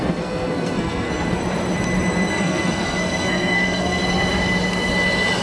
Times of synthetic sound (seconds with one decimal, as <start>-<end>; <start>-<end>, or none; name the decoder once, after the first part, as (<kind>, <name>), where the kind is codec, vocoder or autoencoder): 0.0-1.4 (codec, SNAC); 2.3-4.0